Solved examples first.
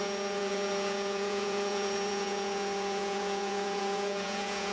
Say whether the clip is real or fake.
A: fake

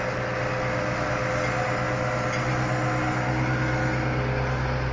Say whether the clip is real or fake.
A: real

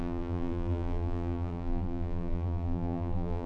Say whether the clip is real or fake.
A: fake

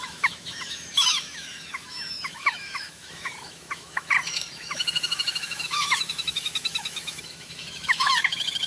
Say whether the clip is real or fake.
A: fake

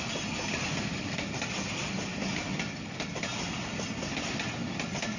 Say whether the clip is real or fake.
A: real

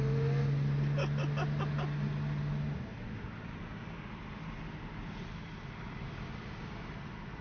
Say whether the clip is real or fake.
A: real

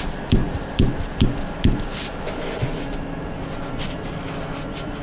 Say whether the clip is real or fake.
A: fake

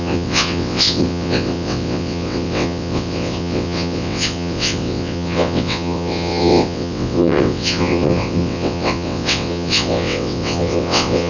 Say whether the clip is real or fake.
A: fake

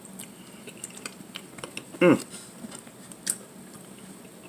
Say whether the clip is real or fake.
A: real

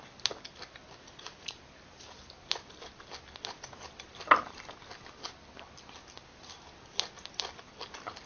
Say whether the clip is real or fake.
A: real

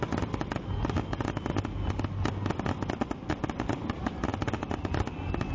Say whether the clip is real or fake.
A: real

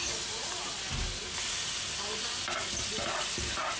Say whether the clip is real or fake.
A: real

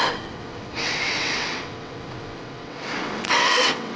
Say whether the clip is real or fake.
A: fake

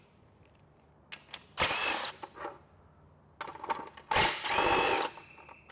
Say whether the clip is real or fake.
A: real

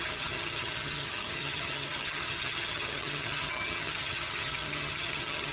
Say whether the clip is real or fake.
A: fake